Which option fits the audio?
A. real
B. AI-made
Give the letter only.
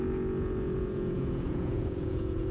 B